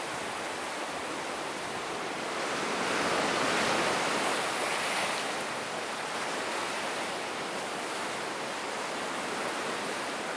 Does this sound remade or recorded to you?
recorded